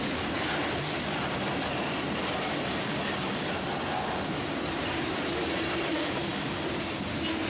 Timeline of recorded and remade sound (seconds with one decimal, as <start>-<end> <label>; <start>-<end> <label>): 0.0-0.6 remade; 0.6-4.7 recorded; 4.7-6.3 remade; 6.3-7.5 recorded